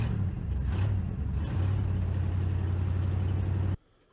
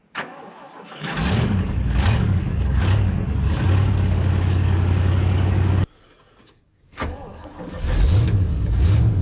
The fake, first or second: second